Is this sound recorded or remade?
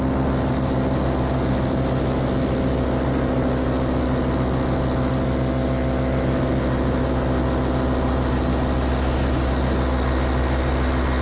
recorded